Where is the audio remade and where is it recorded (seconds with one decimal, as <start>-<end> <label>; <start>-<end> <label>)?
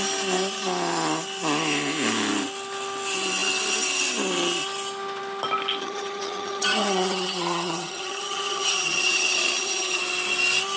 0.0-5.8 recorded; 5.8-10.0 remade; 10.0-10.8 recorded